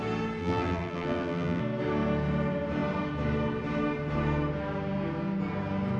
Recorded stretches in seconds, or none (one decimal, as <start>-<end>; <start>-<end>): 0.0-0.4; 1.6-6.0